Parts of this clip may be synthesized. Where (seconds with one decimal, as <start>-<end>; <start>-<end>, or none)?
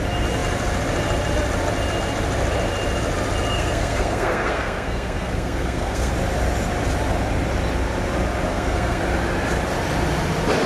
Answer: 3.5-6.1; 8.5-9.0